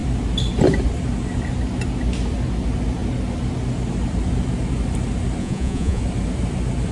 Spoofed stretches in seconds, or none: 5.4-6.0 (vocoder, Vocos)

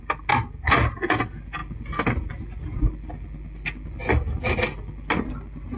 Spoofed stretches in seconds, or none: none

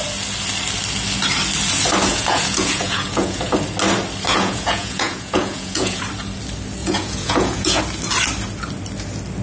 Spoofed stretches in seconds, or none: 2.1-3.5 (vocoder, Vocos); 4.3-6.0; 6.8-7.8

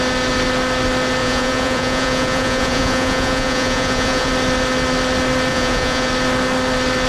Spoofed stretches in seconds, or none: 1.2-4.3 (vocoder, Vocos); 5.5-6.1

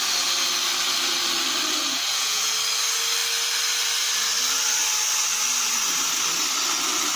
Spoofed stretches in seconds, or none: 1.8-2.5 (vocoder, Vocos)

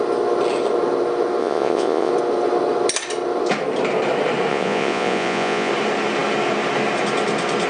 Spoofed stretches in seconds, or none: 1.4-2.1 (vocoder, Vocos); 4.5-5.7